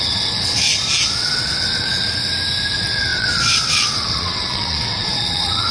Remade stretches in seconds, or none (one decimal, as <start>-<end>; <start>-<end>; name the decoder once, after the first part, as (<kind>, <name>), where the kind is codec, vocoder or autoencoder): 0.0-0.7 (vocoder, WaveNeXt); 1.2-2.1; 2.7-5.7